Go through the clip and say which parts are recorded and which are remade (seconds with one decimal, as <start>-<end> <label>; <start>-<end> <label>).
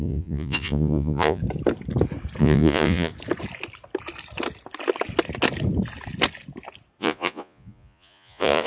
0.0-1.4 remade; 1.4-2.4 recorded; 2.4-3.1 remade; 3.1-7.0 recorded; 7.0-8.7 remade